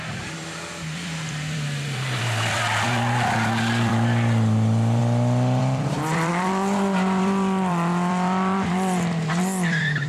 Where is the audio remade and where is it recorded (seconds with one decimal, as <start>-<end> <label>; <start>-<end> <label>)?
0.0-5.0 remade; 5.0-5.6 recorded; 5.6-10.1 remade